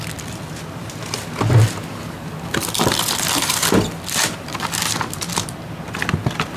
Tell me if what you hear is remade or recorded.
recorded